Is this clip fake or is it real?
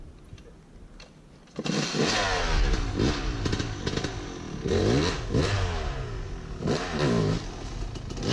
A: real